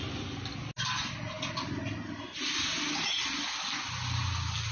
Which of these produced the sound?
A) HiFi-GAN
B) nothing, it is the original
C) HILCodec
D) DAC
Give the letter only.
B